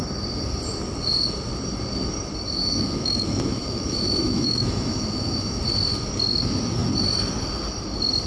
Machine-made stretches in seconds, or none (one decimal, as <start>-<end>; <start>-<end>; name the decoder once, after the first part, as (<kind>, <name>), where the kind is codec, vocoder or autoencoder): 2.6-5.6 (autoencoder, DAC-VAE)